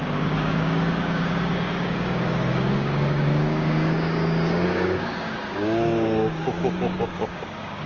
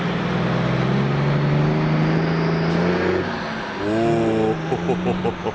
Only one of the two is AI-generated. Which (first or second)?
first